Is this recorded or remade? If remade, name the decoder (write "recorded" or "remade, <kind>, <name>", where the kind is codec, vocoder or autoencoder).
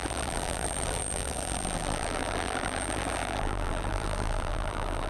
remade, vocoder, BigVGAN v2